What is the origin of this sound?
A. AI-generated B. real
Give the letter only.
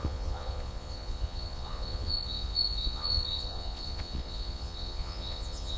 A